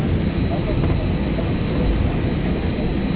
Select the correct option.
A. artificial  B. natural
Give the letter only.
B